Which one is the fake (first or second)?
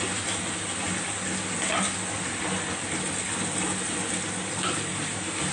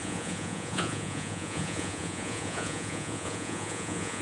second